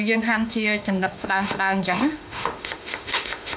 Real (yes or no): no